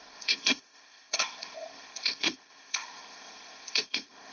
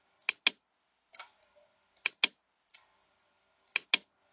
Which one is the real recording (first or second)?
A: second